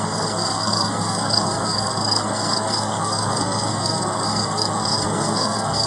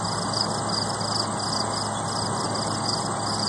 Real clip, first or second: second